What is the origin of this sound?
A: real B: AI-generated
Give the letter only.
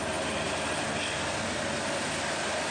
A